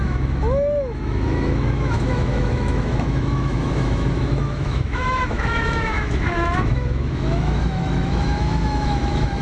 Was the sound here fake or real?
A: fake